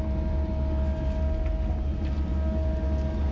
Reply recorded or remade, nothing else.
recorded